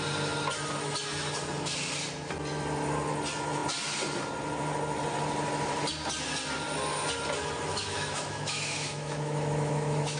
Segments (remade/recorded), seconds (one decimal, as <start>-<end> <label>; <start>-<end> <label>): 0.0-7.7 recorded; 7.7-10.2 remade